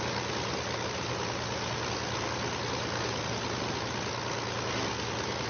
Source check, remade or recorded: recorded